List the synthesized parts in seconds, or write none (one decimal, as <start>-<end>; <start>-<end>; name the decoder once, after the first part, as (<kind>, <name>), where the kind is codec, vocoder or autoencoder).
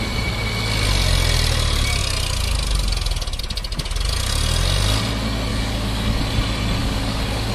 5.5-6.2 (codec, DAC); 6.8-7.5